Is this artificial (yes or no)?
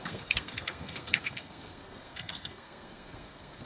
yes